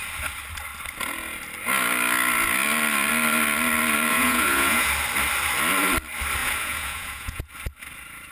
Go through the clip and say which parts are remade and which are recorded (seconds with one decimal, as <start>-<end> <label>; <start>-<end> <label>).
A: 0.0-4.1 recorded; 4.1-4.9 remade; 4.9-6.4 recorded; 6.4-7.5 remade; 7.5-8.3 recorded